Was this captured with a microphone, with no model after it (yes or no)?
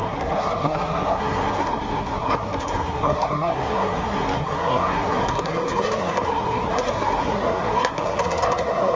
no